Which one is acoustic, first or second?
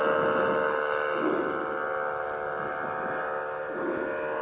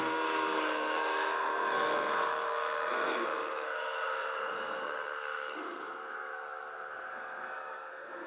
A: first